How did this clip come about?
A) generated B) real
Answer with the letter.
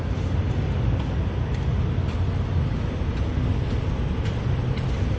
B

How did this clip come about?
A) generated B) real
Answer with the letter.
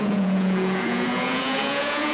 A